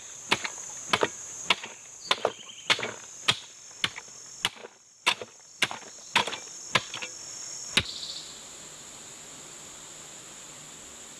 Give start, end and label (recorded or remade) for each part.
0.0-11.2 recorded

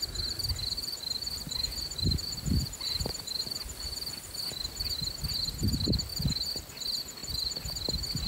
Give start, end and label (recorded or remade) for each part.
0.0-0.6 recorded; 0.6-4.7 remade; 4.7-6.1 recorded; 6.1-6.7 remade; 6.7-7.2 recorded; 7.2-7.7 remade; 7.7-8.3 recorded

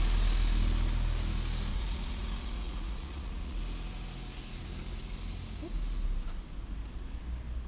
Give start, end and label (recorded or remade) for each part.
0.0-1.7 recorded; 1.7-3.6 remade; 3.6-7.7 recorded

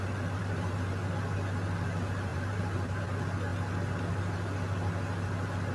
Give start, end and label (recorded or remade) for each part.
0.0-0.4 recorded; 0.4-0.9 remade; 0.9-2.3 recorded; 2.3-3.0 remade; 3.0-5.7 recorded

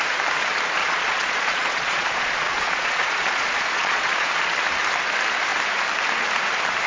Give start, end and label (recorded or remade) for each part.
0.0-0.8 recorded; 0.8-4.4 remade; 4.4-6.9 recorded

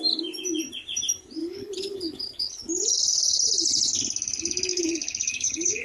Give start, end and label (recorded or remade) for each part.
0.0-1.4 recorded; 1.4-2.6 remade; 2.6-4.7 recorded; 4.7-5.8 remade

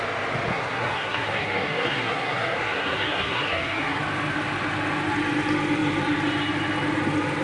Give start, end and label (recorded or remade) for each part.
0.0-0.5 recorded; 0.5-4.0 remade; 4.0-7.4 recorded